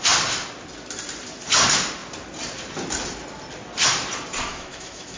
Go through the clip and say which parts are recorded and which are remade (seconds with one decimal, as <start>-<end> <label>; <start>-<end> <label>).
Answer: 0.0-4.5 recorded; 4.5-5.2 remade